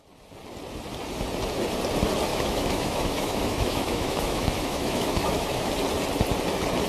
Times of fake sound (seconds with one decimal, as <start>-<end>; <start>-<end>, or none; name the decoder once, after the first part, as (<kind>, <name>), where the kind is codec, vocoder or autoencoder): 2.3-5.7 (autoencoder, DAC-VAE)